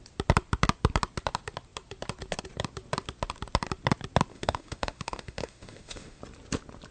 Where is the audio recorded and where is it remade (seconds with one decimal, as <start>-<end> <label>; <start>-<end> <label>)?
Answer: 0.0-4.3 recorded; 4.3-6.2 remade; 6.2-6.9 recorded